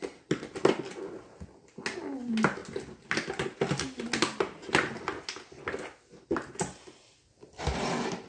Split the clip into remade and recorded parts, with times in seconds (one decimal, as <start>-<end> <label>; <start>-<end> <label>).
0.0-8.3 recorded